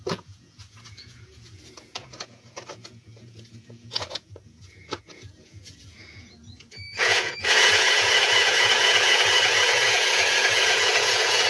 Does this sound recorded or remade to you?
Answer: remade